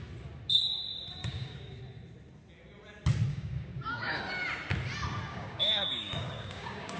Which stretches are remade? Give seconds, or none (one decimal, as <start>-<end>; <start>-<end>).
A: 1.2-1.8; 3.3-4.2; 5.3-7.0